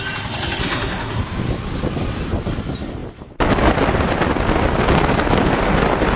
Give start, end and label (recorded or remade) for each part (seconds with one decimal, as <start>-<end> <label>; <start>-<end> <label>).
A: 0.0-0.6 recorded; 0.6-1.2 remade; 1.2-6.2 recorded